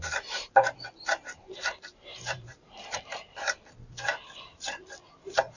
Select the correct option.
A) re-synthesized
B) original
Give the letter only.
A